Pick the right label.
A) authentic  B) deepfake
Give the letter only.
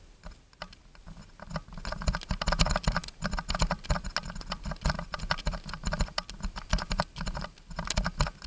A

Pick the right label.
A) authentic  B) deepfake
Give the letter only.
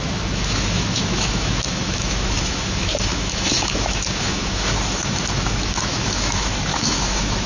B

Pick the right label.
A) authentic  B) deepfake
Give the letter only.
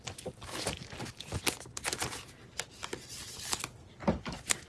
A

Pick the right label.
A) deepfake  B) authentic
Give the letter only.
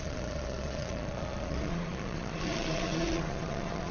A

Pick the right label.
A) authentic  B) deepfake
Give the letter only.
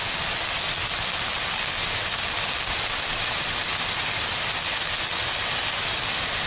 A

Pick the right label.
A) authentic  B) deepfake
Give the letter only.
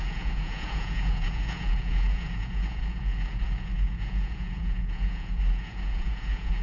B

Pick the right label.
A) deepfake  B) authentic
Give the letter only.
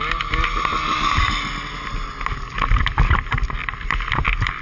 B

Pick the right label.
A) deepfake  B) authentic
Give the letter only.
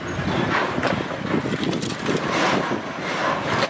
B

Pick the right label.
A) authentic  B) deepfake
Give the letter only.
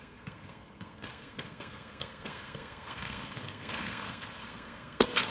B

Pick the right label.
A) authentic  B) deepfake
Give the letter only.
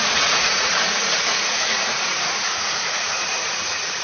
B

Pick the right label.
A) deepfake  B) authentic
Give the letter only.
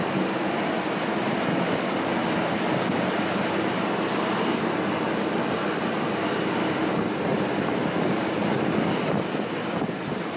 A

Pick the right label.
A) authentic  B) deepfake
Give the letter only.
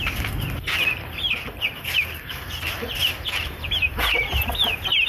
B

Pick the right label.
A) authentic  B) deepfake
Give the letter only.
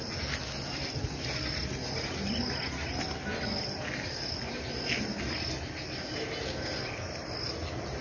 A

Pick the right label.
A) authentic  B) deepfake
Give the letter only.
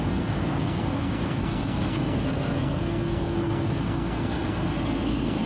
B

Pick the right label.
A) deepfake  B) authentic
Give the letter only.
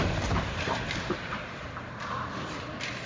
B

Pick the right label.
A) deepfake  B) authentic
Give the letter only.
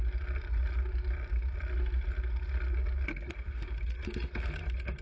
B